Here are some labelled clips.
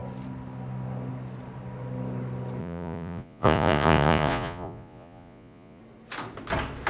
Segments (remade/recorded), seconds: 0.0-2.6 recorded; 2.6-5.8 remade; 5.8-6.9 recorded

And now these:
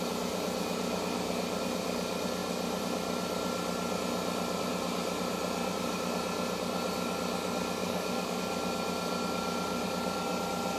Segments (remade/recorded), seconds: 0.0-7.8 recorded; 7.8-8.4 remade; 8.4-10.8 recorded